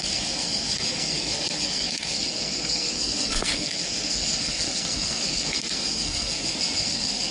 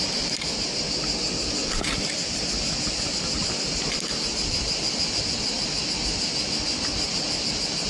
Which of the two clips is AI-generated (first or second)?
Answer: first